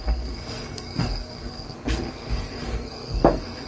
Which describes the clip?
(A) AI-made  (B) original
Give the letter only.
A